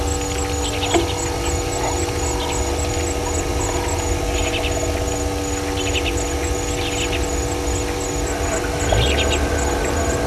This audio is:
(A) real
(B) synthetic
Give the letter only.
A